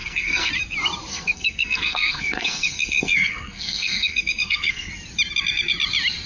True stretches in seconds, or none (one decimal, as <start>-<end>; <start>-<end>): 0.5-1.1; 4.9-6.3